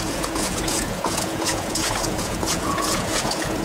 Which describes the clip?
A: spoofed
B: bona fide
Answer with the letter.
A